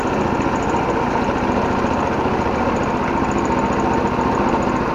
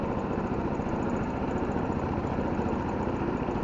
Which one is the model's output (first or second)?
second